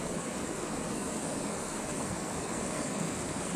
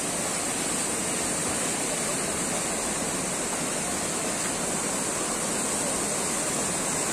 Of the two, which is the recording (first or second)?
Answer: second